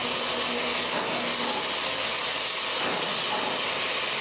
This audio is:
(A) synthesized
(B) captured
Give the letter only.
B